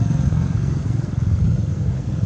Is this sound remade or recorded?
remade